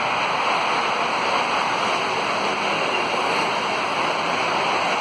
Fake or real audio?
real